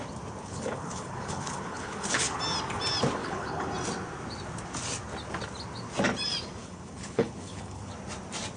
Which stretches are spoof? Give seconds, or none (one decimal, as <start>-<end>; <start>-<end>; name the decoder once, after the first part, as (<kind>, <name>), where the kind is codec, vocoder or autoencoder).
0.4-2.4 (codec, HILCodec); 3.2-3.7; 6.6-7.9